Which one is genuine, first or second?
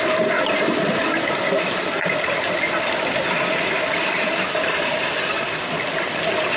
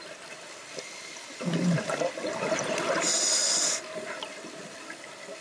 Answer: first